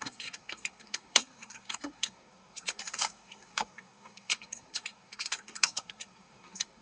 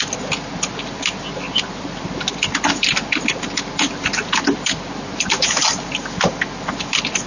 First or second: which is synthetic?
first